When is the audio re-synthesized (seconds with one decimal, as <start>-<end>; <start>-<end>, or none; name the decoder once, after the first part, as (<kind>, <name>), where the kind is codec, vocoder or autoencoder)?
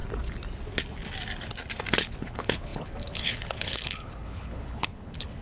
1.9-5.4 (codec, HILCodec)